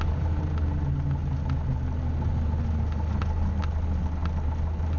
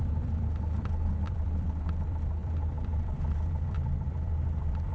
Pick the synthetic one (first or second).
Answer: second